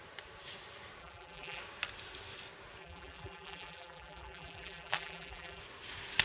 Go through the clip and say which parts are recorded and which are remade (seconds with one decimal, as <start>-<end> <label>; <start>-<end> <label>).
0.0-1.0 recorded; 1.0-1.6 remade; 1.6-2.8 recorded; 2.8-5.6 remade; 5.6-6.2 recorded